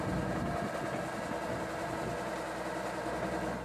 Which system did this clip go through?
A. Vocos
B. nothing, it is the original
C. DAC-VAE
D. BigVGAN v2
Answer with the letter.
B